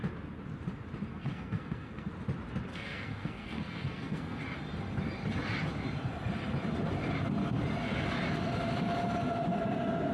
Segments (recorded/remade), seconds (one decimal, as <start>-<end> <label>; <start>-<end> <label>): 0.0-1.1 recorded; 1.1-2.1 remade; 2.1-2.7 recorded; 2.7-4.4 remade; 4.4-10.1 recorded